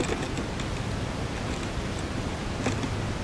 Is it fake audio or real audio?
real